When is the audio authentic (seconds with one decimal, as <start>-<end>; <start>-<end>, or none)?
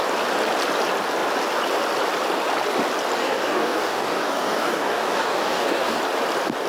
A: 0.0-3.2; 6.0-6.7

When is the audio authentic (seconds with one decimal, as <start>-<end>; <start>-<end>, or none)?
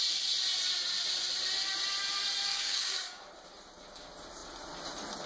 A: 0.0-2.5; 3.2-5.3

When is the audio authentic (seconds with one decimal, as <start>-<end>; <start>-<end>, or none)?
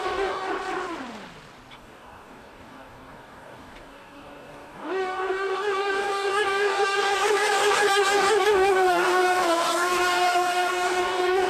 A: 0.5-1.7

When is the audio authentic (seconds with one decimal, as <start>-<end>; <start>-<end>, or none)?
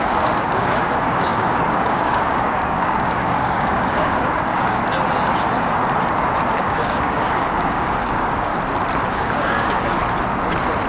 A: 4.8-6.6; 8.5-9.1; 10.0-10.9